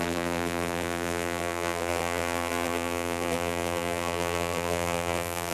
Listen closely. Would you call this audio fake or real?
fake